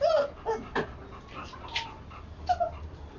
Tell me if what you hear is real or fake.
real